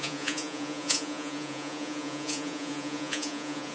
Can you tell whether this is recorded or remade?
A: remade